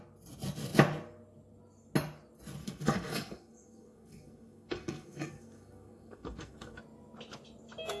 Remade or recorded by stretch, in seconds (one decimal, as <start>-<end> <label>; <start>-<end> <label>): 0.0-2.6 recorded; 2.6-6.8 remade; 6.8-8.0 recorded